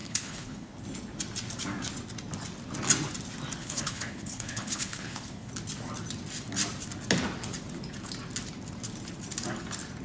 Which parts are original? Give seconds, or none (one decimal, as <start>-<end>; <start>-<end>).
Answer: 0.8-3.6; 5.5-10.0